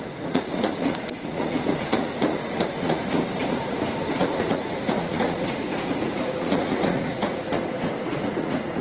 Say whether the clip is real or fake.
fake